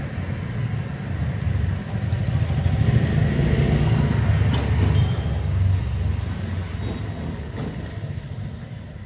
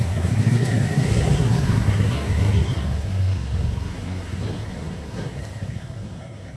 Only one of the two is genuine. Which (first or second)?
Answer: first